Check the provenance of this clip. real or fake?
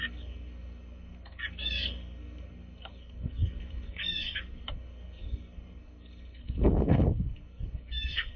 fake